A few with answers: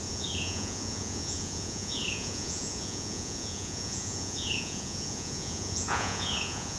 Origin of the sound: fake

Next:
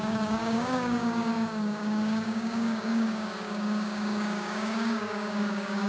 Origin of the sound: fake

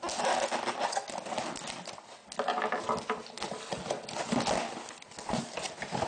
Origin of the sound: real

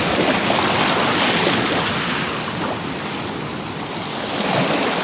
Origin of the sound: real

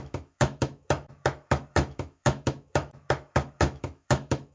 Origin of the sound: fake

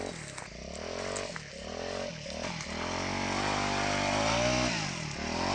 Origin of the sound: real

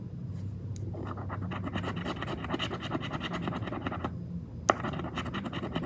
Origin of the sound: real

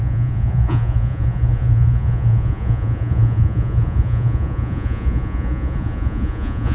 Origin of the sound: fake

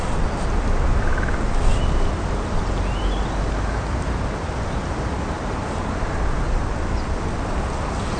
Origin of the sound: real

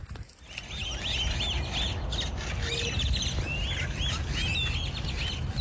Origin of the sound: real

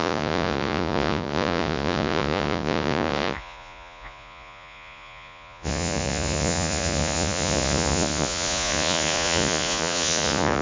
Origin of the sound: fake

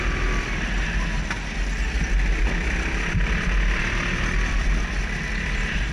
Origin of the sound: real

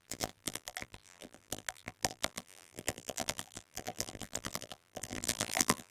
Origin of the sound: fake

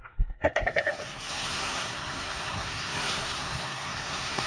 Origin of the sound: fake